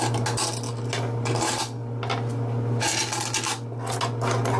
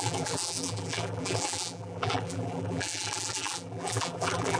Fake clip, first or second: second